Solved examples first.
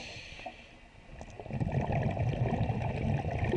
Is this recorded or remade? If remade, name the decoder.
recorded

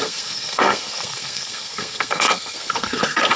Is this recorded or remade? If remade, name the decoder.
remade, codec, SNAC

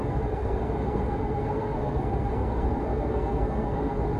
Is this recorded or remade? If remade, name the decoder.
remade, codec, SNAC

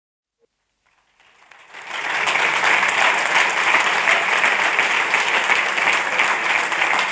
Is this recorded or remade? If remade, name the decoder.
recorded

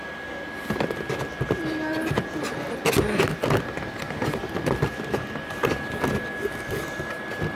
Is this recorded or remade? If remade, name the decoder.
recorded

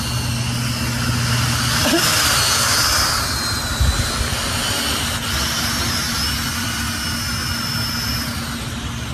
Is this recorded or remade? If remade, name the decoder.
recorded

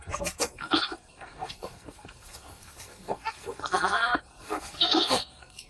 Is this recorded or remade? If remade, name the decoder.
remade, codec, SNAC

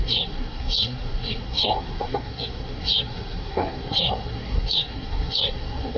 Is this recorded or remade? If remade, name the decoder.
remade, codec, SNAC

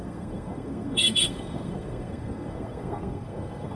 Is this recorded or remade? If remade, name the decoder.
remade, codec, SNAC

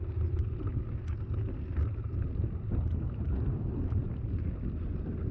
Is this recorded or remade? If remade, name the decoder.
recorded